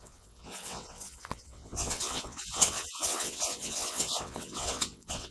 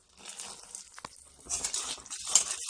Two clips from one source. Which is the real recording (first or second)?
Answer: second